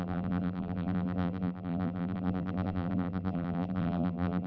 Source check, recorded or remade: remade